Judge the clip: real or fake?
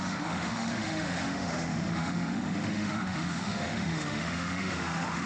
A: fake